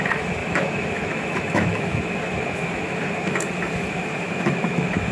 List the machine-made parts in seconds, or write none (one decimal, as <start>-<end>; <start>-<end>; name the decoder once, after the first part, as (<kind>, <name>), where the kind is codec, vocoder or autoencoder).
0.0-5.1 (autoencoder, DAC-VAE)